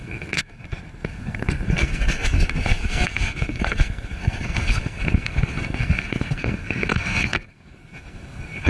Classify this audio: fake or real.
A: fake